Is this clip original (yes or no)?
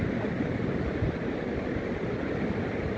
yes